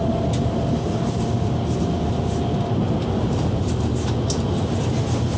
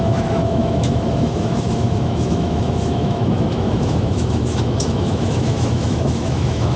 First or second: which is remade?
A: second